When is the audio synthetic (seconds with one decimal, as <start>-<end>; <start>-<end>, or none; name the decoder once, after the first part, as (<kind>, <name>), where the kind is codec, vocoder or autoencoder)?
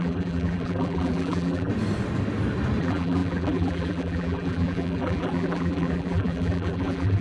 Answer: 0.0-1.7 (vocoder, BigVGAN v2); 2.8-7.2